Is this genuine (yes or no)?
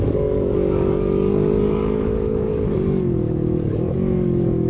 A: no